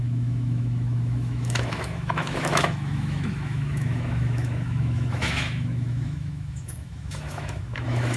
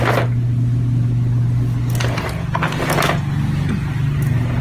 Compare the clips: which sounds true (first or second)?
second